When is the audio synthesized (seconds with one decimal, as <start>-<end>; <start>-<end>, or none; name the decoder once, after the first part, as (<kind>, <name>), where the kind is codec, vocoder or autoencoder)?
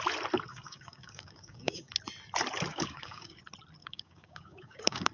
0.5-1.9 (codec, DAC); 2.7-3.4; 3.8-5.1